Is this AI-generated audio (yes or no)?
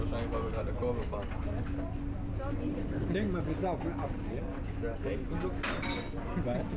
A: no